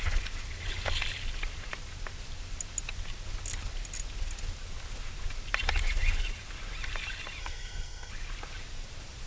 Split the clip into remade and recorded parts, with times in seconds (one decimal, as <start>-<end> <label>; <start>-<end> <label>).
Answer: 0.0-7.4 recorded; 7.4-8.1 remade; 8.1-9.3 recorded